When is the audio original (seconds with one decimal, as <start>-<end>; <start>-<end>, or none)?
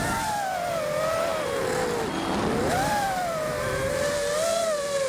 0.0-5.1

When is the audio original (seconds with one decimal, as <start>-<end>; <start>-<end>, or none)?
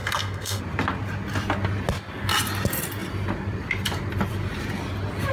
0.6-5.3